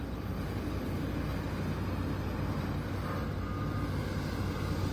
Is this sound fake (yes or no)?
no